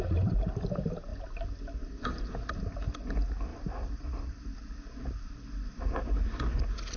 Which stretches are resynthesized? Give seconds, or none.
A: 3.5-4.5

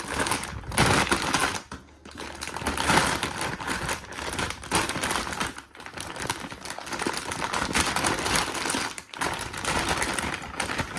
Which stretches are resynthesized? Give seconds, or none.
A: none